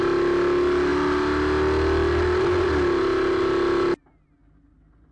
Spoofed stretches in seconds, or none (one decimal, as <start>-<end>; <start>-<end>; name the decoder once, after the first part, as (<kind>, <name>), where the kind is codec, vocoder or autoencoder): none